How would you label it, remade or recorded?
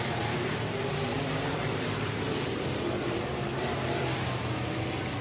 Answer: remade